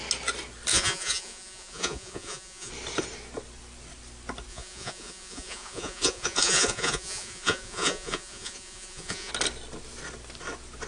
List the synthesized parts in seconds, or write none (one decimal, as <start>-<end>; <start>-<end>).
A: 0.7-2.7; 4.5-9.3